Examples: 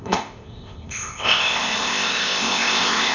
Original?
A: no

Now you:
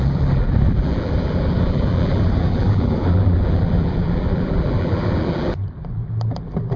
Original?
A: no